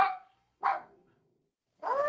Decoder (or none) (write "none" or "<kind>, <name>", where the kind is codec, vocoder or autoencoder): codec, SNAC